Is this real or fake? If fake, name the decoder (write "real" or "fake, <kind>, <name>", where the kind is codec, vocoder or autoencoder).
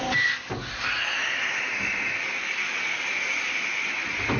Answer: real